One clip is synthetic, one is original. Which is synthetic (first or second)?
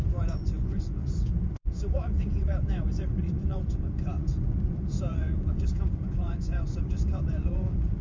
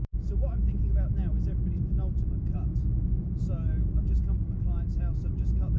first